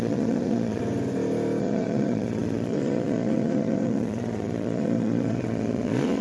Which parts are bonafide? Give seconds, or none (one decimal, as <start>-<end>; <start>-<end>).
0.8-1.6